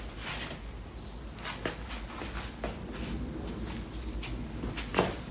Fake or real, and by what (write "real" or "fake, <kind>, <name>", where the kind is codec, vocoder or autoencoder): real